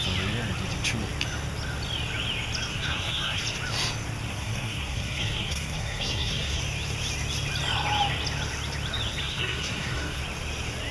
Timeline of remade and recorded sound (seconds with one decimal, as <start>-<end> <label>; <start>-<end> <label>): 0.0-2.7 recorded; 2.7-3.4 remade; 3.4-4.3 recorded; 4.3-6.6 remade; 6.6-9.2 recorded; 9.2-10.2 remade; 10.2-10.9 recorded